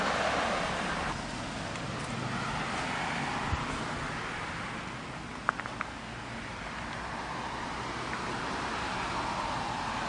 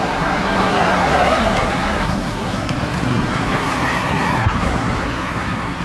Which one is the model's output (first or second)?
second